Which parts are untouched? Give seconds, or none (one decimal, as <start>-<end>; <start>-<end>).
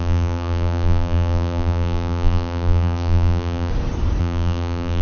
3.7-4.2